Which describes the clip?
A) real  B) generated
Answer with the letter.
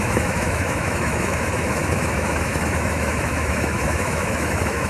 B